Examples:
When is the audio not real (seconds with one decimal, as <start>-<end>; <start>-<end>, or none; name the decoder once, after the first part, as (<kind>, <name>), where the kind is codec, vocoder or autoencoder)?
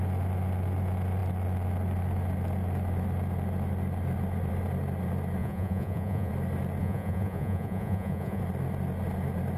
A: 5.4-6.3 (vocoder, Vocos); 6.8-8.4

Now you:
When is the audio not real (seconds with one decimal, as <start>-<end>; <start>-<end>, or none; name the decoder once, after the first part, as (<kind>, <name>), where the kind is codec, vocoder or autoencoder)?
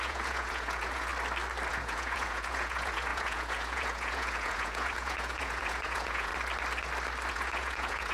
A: 0.0-1.1 (vocoder, Vocos); 1.7-6.3; 7.3-8.1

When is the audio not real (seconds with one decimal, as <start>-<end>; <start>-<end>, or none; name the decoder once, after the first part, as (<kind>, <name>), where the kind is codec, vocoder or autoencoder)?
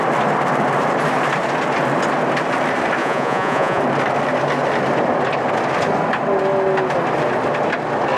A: 3.0-3.8 (vocoder, Vocos)